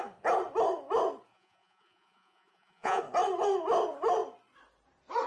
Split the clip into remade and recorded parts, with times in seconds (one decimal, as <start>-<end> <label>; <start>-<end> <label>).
0.0-1.3 recorded; 1.3-3.0 remade; 3.0-5.3 recorded